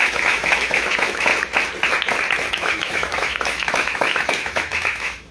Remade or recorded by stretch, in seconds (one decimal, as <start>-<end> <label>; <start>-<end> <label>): 0.0-1.3 remade; 1.3-2.5 recorded; 2.5-5.3 remade